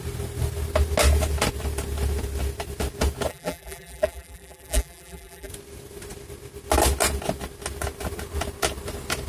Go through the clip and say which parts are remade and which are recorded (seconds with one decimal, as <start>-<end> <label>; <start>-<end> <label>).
0.0-3.3 recorded; 3.3-5.5 remade; 5.5-9.3 recorded

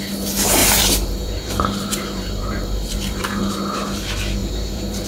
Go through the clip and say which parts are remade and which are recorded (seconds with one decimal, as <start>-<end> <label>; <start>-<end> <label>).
0.0-0.6 recorded; 0.6-3.4 remade; 3.4-4.4 recorded; 4.4-5.1 remade

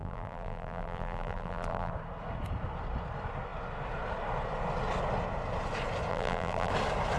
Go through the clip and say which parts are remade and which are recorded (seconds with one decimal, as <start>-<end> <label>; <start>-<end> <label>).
0.0-1.9 remade; 1.9-6.1 recorded; 6.1-6.7 remade; 6.7-7.2 recorded

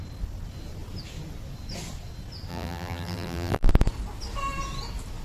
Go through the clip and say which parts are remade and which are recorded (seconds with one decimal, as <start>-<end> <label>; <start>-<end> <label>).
0.0-2.5 recorded; 2.5-3.7 remade; 3.7-5.2 recorded

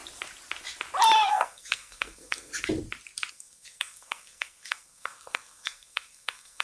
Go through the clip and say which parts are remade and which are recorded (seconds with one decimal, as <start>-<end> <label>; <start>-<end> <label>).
0.0-1.3 recorded; 1.3-2.5 remade; 2.5-3.3 recorded; 3.3-6.6 remade

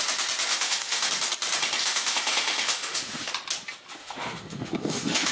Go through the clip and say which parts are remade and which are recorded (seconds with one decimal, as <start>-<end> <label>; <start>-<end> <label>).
0.0-0.5 recorded; 0.5-1.1 remade; 1.1-1.8 recorded; 1.8-3.3 remade; 3.3-4.0 recorded; 4.0-5.3 remade

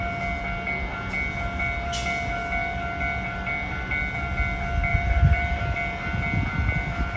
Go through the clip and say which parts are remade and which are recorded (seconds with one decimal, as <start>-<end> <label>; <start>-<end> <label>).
0.0-4.9 recorded; 4.9-5.6 remade; 5.6-7.2 recorded